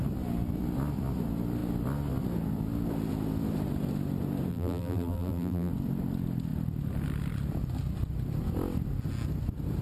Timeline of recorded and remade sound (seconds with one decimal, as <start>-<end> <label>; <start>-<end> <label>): 0.0-4.5 recorded; 4.5-5.7 remade; 5.7-9.8 recorded